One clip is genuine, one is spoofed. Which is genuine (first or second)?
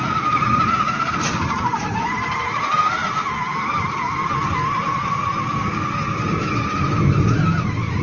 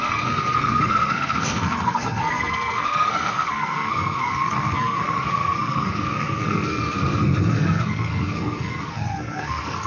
first